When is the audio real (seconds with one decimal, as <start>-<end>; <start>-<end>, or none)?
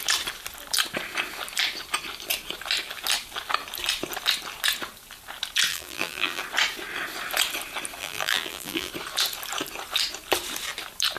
0.0-5.7; 6.4-8.0; 8.9-11.2